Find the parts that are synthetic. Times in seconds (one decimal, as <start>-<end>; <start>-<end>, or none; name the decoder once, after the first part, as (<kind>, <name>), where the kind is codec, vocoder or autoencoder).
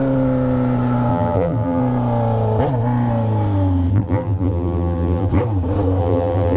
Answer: 1.1-1.8 (vocoder, BigVGAN v2); 3.9-5.3; 6.0-6.6